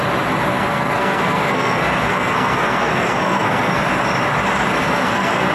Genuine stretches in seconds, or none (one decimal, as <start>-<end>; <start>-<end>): 0.0-0.5; 3.8-4.8